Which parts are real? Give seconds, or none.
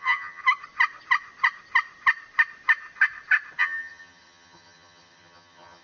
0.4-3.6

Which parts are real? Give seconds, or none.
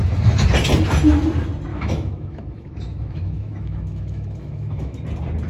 0.0-1.7; 5.0-5.5